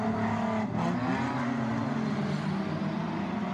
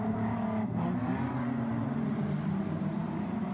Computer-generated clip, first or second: second